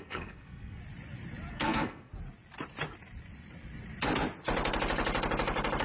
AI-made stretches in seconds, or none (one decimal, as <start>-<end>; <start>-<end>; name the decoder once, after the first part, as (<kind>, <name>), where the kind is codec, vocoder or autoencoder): 0.0-0.8 (codec, SNAC); 1.5-2.1